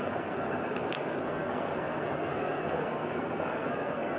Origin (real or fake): fake